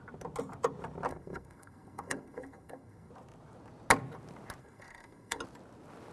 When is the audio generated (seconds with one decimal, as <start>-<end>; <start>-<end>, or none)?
1.1-3.1; 4.6-5.4